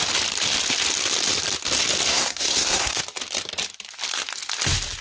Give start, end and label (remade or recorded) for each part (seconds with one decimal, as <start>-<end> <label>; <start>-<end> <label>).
0.0-2.1 recorded; 2.1-3.0 remade; 3.0-5.0 recorded

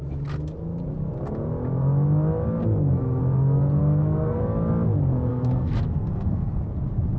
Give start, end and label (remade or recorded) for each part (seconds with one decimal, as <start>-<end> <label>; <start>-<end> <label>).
0.0-2.6 recorded; 2.6-3.2 remade; 3.2-3.8 recorded; 3.8-4.4 remade; 4.4-5.3 recorded; 5.3-6.6 remade; 6.6-7.2 recorded

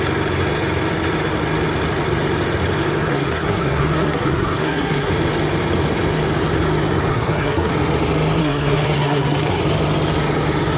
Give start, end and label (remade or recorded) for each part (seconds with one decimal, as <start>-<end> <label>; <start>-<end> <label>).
0.0-3.1 recorded; 3.1-5.1 remade; 5.1-7.1 recorded; 7.1-7.7 remade; 7.7-8.4 recorded; 8.4-9.6 remade; 9.6-10.8 recorded

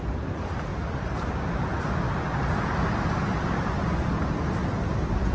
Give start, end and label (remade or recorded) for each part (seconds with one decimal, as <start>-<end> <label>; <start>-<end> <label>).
0.0-4.6 recorded; 4.6-5.3 remade

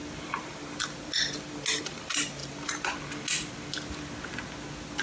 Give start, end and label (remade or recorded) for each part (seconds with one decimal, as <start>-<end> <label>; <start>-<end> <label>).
0.0-5.0 recorded

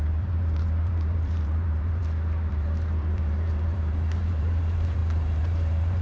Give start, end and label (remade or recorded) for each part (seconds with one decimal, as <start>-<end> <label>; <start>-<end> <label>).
0.0-2.0 remade; 2.0-2.5 recorded; 2.5-6.0 remade

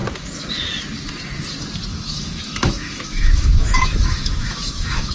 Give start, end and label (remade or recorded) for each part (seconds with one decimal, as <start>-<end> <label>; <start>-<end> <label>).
0.0-1.9 recorded; 1.9-5.1 remade

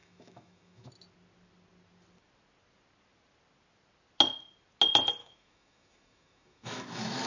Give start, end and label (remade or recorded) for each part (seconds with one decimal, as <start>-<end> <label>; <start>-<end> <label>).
0.0-0.9 remade; 0.9-5.2 recorded; 5.2-7.3 remade